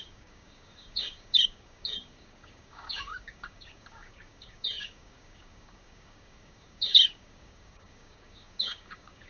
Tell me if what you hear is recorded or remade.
remade